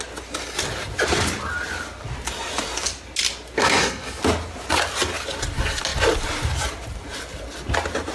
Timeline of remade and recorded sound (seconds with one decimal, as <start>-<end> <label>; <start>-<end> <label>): 0.0-3.6 recorded; 3.6-4.2 remade; 4.2-8.1 recorded